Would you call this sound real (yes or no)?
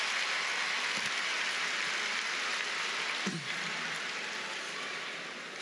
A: yes